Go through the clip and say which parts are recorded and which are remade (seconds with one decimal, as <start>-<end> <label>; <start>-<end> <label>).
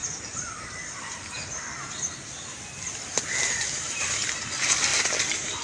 0.0-5.6 remade